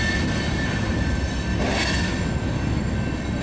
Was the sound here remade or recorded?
recorded